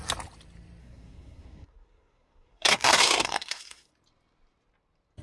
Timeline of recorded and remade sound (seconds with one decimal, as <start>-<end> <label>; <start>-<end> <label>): 0.0-0.8 recorded; 0.8-3.9 remade; 3.9-5.2 recorded